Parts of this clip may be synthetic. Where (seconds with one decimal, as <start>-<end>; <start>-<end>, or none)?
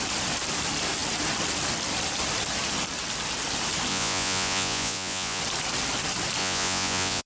3.9-5.4; 6.4-7.3